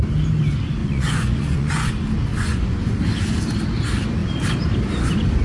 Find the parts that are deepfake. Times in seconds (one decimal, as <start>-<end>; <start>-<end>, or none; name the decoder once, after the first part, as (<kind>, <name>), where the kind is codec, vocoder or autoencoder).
0.8-1.9 (vocoder, Vocos); 2.3-2.9